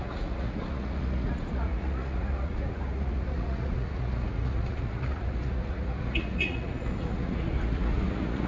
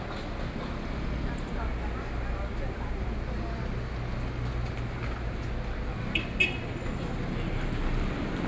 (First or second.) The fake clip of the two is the first